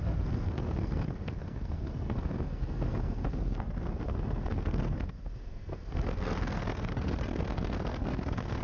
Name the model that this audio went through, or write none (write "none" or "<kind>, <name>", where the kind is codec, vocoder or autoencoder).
codec, SNAC